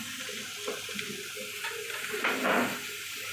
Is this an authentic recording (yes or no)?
yes